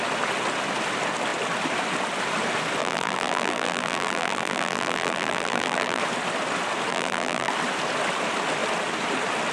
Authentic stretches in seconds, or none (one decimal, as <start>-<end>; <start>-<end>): 0.0-2.8; 6.0-6.9; 7.5-9.5